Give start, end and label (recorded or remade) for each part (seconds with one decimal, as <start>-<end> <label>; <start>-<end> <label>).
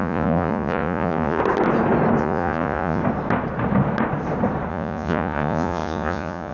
0.0-1.4 remade; 1.4-2.2 recorded; 2.2-3.0 remade; 3.0-4.7 recorded; 4.7-6.5 remade